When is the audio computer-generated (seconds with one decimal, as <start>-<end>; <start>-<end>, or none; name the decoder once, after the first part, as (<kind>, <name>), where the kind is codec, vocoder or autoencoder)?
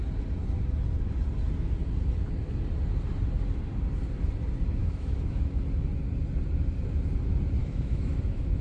4.8-5.6 (autoencoder, DAC-VAE); 7.6-8.6